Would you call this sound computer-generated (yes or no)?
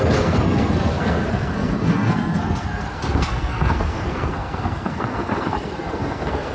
yes